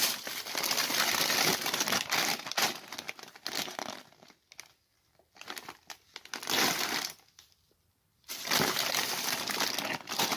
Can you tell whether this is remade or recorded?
recorded